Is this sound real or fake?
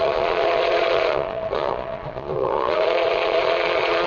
fake